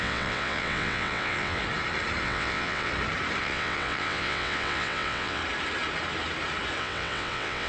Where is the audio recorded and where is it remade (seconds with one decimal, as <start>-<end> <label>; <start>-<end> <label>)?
0.0-1.6 remade; 1.6-2.2 recorded; 2.2-2.9 remade; 2.9-3.4 recorded; 3.4-5.4 remade; 5.4-6.8 recorded; 6.8-7.7 remade